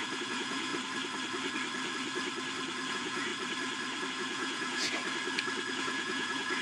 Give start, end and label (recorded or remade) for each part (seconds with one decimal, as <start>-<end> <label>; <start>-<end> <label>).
0.0-0.7 remade; 0.7-2.9 recorded; 2.9-3.3 remade; 3.3-4.1 recorded; 4.1-5.0 remade; 5.0-5.7 recorded; 5.7-6.6 remade